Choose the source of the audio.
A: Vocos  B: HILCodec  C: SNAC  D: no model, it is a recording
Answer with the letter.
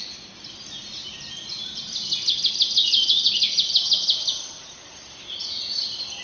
D